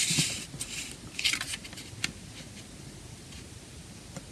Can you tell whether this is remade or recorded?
recorded